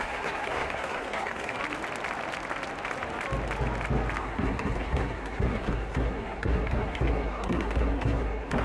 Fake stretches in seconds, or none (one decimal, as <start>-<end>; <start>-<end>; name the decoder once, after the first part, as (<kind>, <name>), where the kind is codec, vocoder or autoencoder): 0.0-1.6 (codec, SNAC); 4.2-8.6